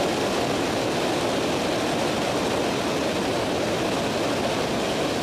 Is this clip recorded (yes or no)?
yes